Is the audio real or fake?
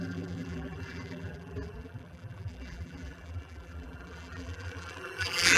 fake